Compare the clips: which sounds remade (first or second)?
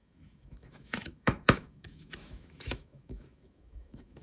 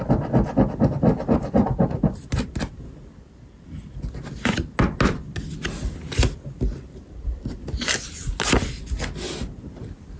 first